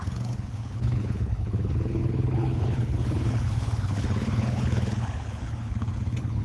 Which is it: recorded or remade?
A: remade